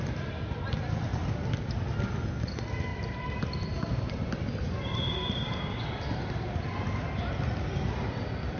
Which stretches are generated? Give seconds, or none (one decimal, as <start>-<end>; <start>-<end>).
2.9-5.9